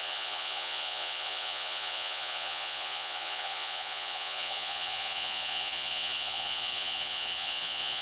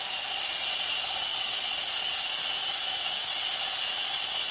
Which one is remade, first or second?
first